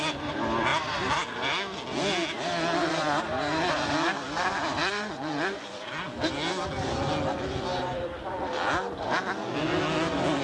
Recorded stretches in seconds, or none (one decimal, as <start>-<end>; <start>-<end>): 0.0-4.8; 5.6-10.4